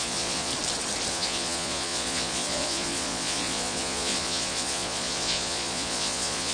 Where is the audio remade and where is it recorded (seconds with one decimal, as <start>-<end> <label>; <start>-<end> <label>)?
0.0-0.5 remade; 0.5-1.1 recorded; 1.1-6.5 remade